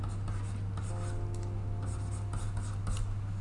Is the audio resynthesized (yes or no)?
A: no